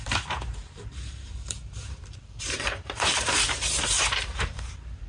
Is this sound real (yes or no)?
no